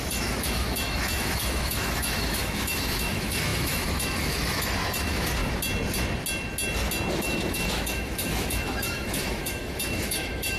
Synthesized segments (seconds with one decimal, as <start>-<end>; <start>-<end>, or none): 0.0-5.4; 7.1-10.6